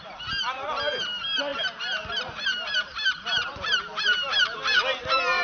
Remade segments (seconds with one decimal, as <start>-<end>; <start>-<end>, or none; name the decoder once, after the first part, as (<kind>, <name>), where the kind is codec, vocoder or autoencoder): none